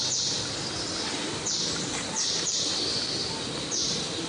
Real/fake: real